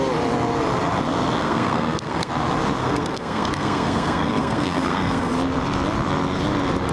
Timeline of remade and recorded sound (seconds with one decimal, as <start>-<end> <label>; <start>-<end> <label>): 0.0-1.4 recorded; 1.4-2.3 remade; 2.3-2.8 recorded; 2.8-5.3 remade; 5.3-6.9 recorded

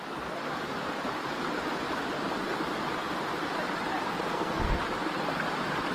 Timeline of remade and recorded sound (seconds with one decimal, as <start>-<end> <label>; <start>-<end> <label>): 0.0-4.3 recorded; 4.3-4.8 remade; 4.8-5.9 recorded

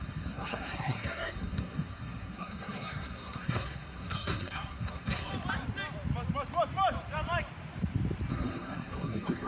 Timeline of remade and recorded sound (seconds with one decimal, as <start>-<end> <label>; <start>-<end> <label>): 0.0-5.3 remade; 5.3-8.3 recorded; 8.3-9.5 remade

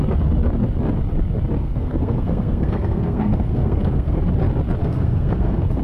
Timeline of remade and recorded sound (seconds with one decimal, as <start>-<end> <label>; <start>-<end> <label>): 0.0-1.6 recorded; 1.6-4.2 remade; 4.2-4.8 recorded; 4.8-5.8 remade